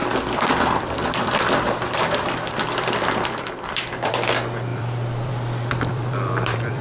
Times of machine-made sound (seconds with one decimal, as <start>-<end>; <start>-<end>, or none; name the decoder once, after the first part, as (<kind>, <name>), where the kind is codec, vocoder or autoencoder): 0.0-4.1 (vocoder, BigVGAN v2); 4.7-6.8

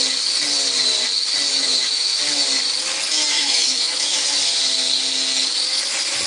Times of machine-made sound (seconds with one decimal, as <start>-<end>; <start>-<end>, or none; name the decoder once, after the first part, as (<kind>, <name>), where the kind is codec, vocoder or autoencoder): 1.5-2.2 (autoencoder, DAC-VAE); 3.3-4.4

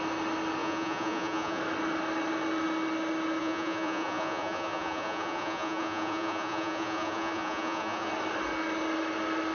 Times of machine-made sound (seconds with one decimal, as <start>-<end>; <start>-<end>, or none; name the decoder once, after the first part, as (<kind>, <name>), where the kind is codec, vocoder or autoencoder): 0.6-1.6 (vocoder, Vocos); 3.4-8.1

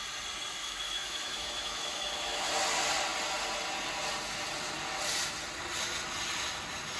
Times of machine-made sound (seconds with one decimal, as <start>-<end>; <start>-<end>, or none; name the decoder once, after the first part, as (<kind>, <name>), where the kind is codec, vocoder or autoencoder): 0.6-2.5 (autoencoder, DAC-VAE)